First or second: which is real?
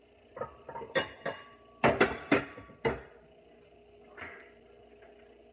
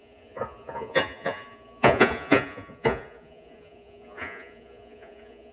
first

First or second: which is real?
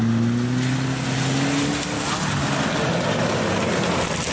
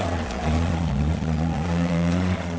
first